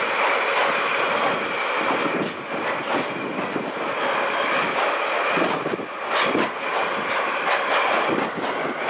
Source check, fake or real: real